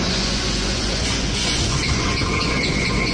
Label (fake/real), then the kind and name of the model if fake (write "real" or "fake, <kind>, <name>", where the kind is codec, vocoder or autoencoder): fake, vocoder, Vocos